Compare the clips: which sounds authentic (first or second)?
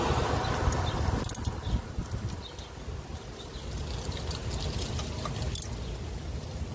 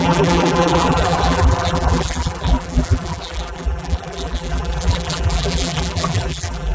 first